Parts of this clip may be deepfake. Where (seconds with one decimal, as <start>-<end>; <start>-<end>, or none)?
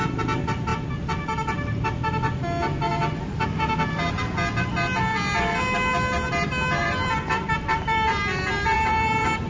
6.8-9.5